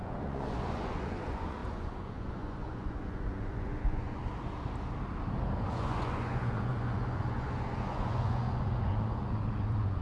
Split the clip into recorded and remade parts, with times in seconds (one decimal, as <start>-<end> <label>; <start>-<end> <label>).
0.0-4.2 remade; 4.2-5.7 recorded; 5.7-10.0 remade